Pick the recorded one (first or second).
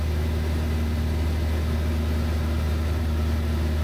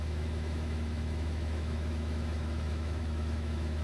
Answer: first